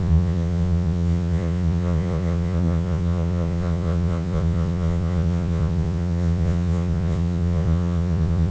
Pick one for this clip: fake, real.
fake